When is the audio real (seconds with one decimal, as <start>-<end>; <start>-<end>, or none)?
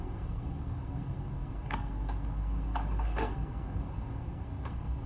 none